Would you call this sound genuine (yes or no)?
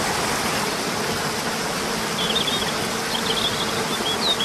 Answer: yes